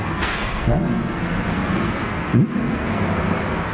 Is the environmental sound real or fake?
fake